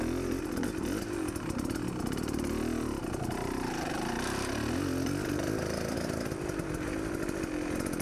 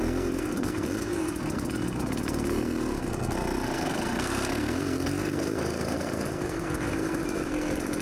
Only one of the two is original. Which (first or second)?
first